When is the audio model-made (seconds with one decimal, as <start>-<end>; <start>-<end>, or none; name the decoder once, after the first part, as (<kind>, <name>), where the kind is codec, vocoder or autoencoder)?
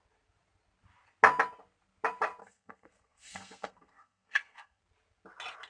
2.4-4.8 (codec, SNAC)